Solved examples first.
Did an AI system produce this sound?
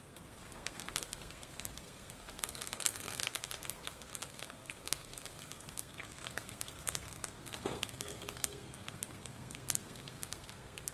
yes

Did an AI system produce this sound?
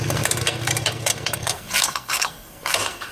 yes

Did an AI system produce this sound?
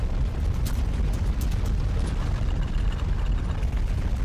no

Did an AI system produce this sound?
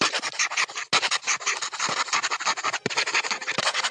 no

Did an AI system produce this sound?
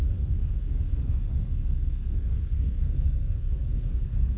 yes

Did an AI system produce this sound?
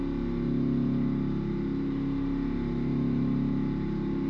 no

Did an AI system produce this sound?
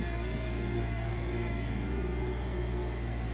yes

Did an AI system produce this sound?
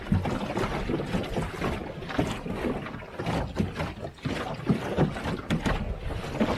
no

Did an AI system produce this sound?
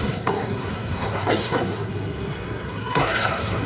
yes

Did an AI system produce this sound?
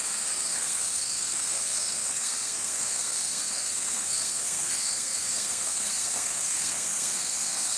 yes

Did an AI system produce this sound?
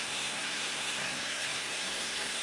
yes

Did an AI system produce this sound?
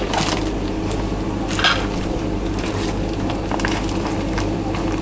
no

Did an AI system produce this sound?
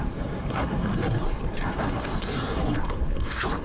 yes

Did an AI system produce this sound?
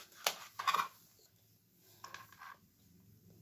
no